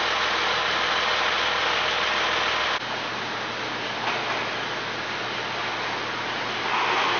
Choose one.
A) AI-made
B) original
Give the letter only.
B